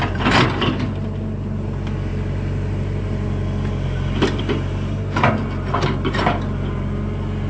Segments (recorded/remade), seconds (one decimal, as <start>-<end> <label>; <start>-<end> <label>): 0.0-7.5 recorded